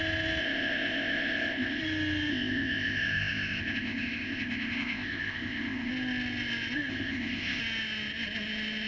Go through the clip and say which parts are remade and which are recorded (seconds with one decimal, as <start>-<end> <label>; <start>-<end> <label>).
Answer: 0.0-0.4 recorded; 0.4-1.8 remade; 1.8-2.3 recorded; 2.3-5.9 remade; 5.9-6.9 recorded; 6.9-7.6 remade; 7.6-8.9 recorded

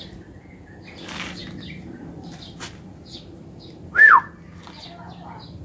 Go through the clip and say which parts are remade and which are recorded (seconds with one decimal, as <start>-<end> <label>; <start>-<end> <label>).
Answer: 0.0-5.6 recorded

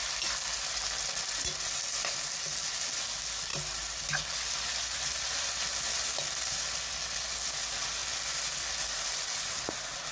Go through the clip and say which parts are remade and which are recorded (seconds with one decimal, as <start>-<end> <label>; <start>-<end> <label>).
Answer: 0.0-10.1 recorded

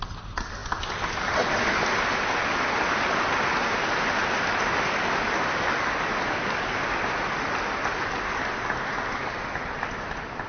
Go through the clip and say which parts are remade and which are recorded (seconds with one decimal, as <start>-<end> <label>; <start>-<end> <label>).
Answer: 0.0-10.5 recorded

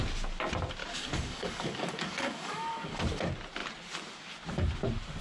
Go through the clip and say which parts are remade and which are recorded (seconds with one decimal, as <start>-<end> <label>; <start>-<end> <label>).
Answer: 0.0-0.8 recorded; 0.8-3.0 remade; 3.0-5.2 recorded

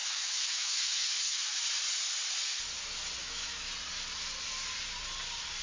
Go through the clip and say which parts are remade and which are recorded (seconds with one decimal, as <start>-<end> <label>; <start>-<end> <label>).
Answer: 0.0-1.6 remade; 1.6-3.2 recorded; 3.2-3.7 remade; 3.7-5.6 recorded

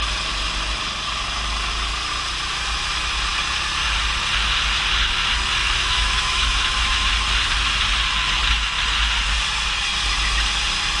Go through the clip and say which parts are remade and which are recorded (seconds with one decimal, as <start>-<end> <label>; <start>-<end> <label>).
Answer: 0.0-5.6 recorded; 5.6-7.1 remade; 7.1-11.0 recorded

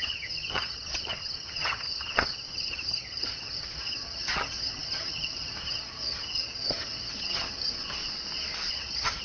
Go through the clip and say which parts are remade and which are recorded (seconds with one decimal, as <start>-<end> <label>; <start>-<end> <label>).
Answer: 0.0-8.0 remade; 8.0-8.7 recorded; 8.7-9.2 remade